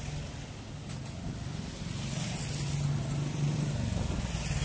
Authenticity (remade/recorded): recorded